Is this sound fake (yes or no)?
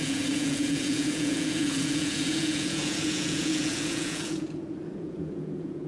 yes